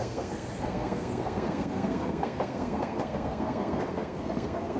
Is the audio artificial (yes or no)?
yes